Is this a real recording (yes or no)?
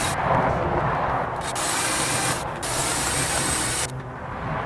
yes